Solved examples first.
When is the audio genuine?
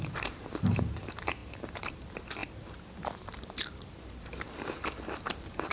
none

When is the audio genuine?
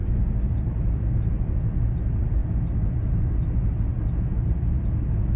0.0-2.4; 2.9-5.4